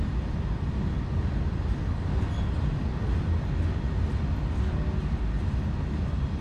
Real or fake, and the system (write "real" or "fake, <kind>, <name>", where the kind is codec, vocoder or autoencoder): real